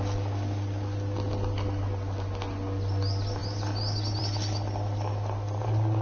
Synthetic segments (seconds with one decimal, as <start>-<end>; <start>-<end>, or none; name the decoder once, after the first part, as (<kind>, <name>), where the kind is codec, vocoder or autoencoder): none